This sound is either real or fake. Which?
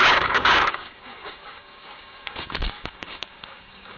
fake